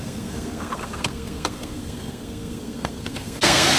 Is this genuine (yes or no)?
no